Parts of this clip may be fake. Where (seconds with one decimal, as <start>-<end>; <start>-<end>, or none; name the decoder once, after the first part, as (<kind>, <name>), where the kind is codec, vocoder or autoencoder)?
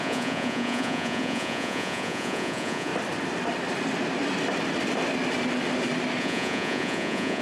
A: 0.0-2.9 (vocoder, Vocos); 6.2-7.4